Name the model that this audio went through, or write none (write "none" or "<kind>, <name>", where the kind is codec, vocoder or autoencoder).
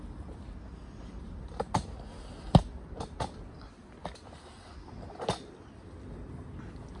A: none